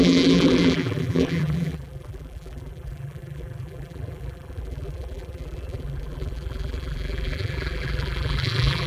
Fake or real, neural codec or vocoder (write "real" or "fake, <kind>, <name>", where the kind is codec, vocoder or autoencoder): fake, vocoder, BigVGAN v2